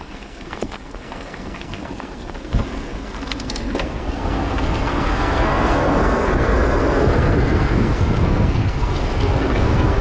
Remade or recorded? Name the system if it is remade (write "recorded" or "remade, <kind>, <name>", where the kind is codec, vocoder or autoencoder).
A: remade, codec, SNAC